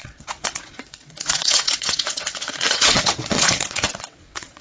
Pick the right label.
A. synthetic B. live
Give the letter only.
A